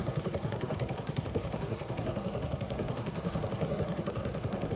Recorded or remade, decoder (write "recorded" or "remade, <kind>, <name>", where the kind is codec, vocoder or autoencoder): remade, codec, SNAC